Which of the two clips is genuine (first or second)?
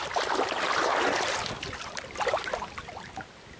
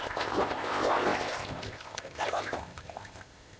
first